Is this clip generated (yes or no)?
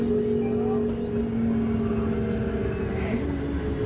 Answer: no